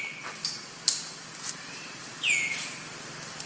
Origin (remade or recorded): recorded